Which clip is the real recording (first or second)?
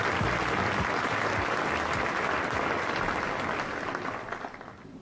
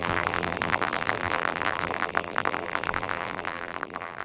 first